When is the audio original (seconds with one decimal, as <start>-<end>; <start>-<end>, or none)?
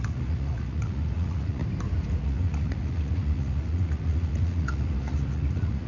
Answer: 1.6-2.2